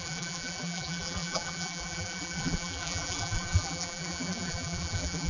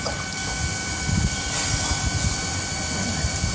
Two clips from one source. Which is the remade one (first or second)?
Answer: first